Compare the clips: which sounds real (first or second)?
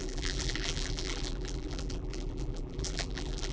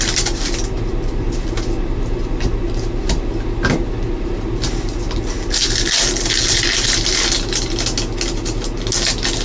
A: second